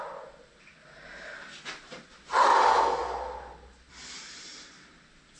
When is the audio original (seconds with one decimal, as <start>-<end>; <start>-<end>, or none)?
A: 0.0-5.4